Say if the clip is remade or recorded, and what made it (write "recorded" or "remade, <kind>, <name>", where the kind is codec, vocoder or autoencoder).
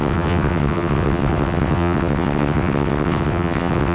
remade, vocoder, WaveNeXt